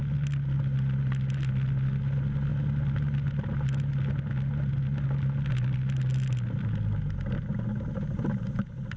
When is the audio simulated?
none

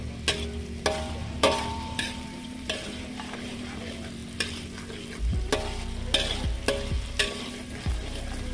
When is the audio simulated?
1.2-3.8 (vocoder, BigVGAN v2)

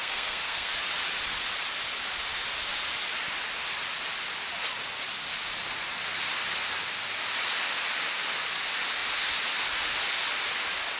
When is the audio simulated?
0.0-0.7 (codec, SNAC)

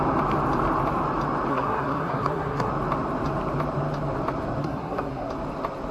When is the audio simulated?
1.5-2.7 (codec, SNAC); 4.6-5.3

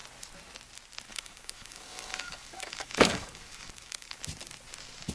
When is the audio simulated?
1.1-4.2 (codec, DAC)

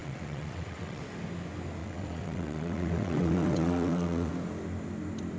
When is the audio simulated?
0.0-1.0 (vocoder, WaveNeXt); 1.8-4.3

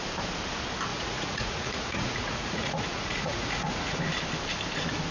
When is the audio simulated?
0.9-4.0 (vocoder, Vocos)